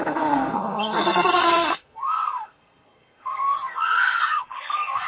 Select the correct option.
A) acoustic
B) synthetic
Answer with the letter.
B